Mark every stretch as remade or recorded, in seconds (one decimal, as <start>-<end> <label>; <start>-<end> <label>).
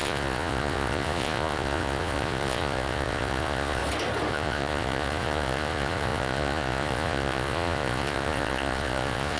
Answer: 0.0-3.8 remade; 3.8-4.3 recorded; 4.3-9.4 remade